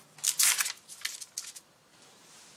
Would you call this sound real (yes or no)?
yes